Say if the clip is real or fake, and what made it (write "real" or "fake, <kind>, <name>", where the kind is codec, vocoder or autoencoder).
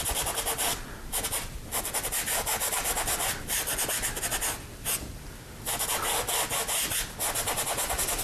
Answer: real